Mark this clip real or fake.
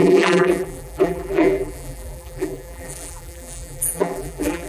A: fake